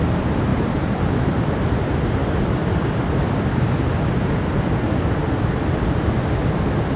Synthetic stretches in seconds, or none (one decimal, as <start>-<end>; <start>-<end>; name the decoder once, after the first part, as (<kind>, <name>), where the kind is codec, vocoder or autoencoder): 0.5-1.5 (vocoder, BigVGAN v2)